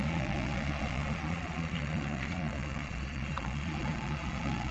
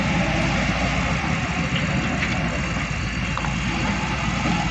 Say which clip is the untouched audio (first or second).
second